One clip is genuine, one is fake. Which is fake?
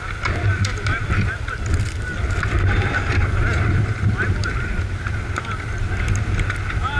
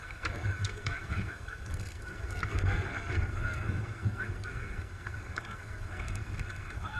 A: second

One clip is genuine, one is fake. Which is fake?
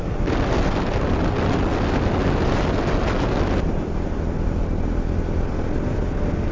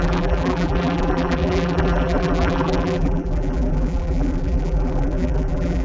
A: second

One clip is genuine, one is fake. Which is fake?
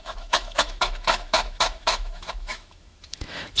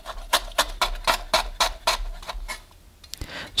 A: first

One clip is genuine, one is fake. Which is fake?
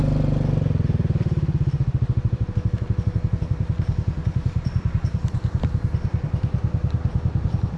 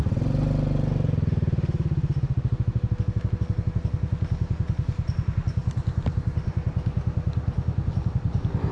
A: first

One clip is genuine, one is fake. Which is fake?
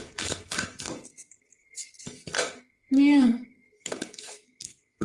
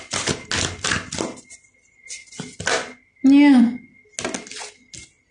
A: first